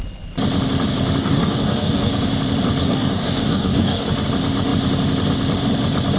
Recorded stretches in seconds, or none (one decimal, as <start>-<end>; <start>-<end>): 0.0-1.2; 2.1-2.8; 4.1-6.2